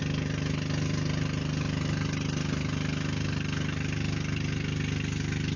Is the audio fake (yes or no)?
no